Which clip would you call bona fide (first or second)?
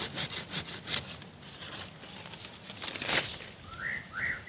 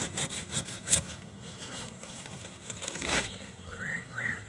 first